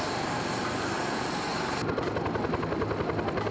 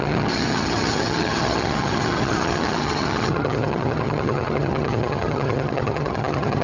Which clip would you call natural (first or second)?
first